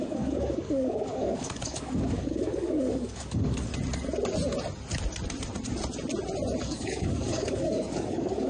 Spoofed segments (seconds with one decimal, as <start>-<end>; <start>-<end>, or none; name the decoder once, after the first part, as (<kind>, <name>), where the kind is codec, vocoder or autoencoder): 0.0-3.7 (codec, DAC); 6.6-8.5